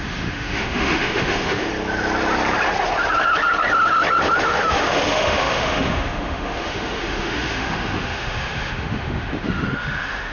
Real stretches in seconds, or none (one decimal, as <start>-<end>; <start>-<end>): 1.7-4.4